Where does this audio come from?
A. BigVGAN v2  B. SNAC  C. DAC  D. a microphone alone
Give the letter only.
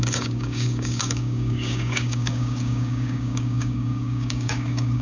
C